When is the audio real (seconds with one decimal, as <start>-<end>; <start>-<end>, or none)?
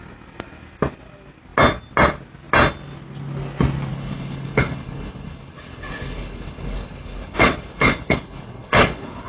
0.0-3.9